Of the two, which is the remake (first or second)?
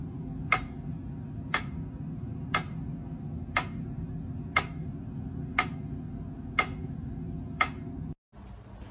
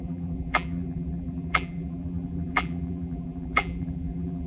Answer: second